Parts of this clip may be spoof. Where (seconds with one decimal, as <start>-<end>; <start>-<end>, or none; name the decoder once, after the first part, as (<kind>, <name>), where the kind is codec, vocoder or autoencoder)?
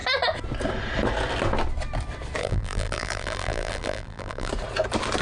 2.4-4.5 (vocoder, BigVGAN v2)